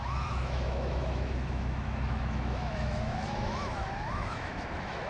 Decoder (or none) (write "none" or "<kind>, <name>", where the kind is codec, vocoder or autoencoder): autoencoder, DAC-VAE